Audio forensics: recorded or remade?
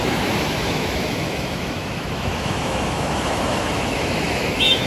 remade